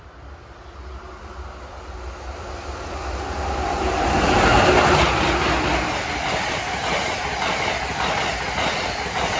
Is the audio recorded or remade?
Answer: recorded